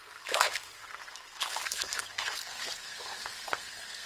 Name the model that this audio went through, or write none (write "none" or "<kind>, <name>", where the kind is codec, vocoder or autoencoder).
codec, SNAC